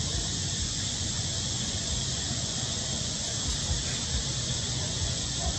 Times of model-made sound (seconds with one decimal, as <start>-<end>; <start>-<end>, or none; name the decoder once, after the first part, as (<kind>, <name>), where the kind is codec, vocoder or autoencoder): 0.0-3.3 (vocoder, Vocos); 4.3-5.6